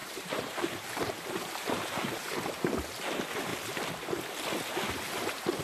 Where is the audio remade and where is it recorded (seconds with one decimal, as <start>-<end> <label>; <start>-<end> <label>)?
0.0-2.3 remade; 2.3-3.5 recorded; 3.5-4.2 remade; 4.2-5.6 recorded